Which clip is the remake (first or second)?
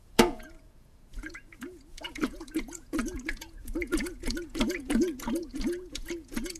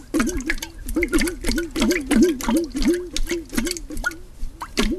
first